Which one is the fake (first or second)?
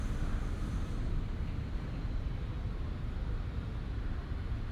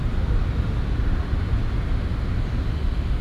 second